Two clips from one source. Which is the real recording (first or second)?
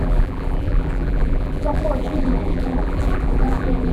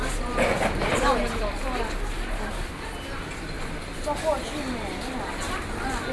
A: second